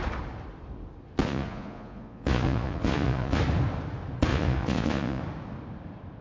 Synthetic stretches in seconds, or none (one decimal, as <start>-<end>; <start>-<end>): 1.2-3.4; 4.3-5.2